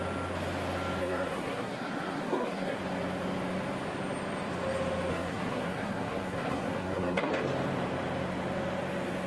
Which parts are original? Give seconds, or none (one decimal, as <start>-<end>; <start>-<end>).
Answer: 0.0-1.0; 2.8-5.1; 7.3-9.3